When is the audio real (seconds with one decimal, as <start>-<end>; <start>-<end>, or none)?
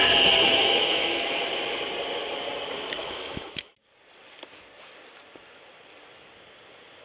0.0-0.4; 1.2-3.0; 3.7-7.0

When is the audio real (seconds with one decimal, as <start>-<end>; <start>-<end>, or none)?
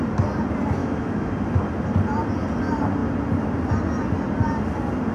0.0-0.8; 1.3-5.1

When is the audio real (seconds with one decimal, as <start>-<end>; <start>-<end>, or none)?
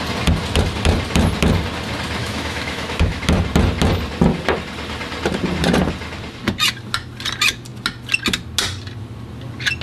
0.0-2.2; 3.2-9.8